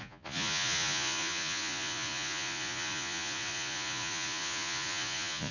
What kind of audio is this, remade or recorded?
remade